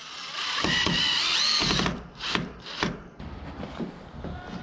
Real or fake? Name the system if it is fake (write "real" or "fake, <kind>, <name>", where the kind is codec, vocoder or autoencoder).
real